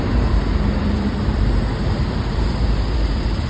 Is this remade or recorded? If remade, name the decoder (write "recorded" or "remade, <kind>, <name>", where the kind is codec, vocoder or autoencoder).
remade, vocoder, BigVGAN v2